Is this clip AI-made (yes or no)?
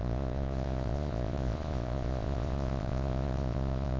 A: yes